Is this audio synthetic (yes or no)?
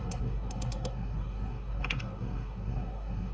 yes